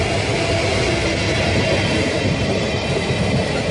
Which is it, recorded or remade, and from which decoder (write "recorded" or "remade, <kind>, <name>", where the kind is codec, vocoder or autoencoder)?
recorded